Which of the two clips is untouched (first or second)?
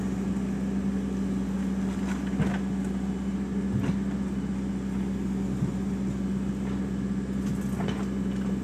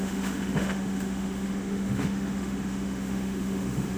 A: first